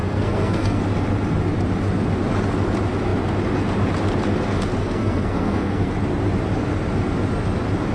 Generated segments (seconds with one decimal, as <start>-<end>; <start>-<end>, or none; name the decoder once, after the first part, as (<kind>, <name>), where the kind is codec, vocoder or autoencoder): 0.0-0.8 (codec, SNAC); 4.8-5.9